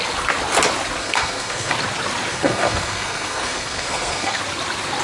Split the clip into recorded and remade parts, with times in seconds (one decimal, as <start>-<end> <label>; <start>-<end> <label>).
0.0-1.0 recorded; 1.0-1.7 remade; 1.7-2.3 recorded; 2.3-4.4 remade; 4.4-5.0 recorded